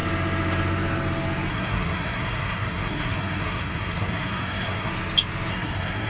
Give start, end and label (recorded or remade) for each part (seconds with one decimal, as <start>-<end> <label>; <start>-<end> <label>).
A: 0.0-1.5 recorded; 1.5-4.9 remade; 4.9-5.5 recorded; 5.5-6.1 remade